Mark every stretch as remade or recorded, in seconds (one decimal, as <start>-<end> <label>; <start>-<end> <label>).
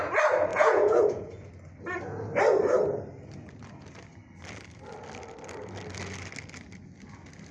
0.0-0.5 recorded; 0.5-1.5 remade; 1.5-7.5 recorded